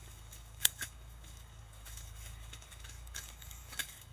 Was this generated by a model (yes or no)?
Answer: yes